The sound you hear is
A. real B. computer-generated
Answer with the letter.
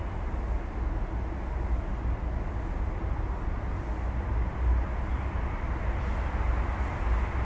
A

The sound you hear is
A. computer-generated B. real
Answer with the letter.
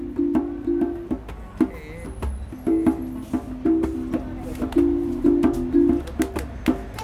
B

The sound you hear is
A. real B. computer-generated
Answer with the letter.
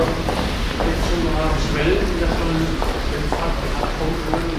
A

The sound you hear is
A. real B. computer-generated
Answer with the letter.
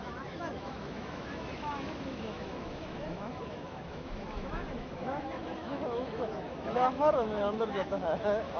B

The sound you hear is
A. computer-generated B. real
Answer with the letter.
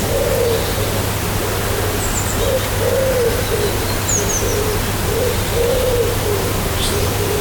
B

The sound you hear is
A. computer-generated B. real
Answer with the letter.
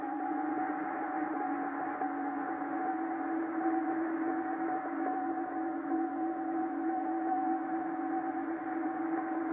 A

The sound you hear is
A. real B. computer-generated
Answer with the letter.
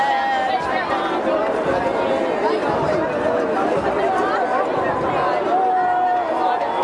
A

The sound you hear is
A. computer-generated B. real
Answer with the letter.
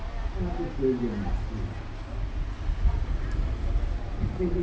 B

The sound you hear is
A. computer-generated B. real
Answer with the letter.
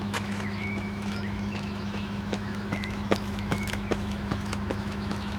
A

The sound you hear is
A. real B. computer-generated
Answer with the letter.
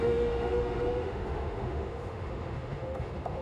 B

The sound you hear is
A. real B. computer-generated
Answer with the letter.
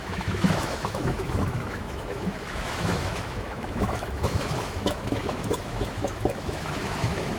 B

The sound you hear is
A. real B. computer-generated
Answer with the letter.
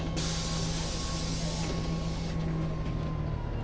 A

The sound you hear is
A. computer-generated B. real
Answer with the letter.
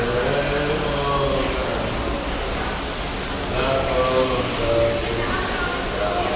B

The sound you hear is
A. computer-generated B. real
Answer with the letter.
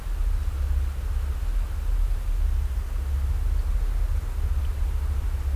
B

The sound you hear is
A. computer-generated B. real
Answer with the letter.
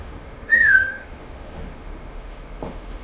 A